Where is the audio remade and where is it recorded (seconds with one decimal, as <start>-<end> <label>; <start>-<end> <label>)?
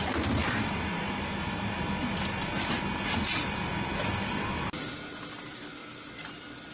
0.0-6.7 recorded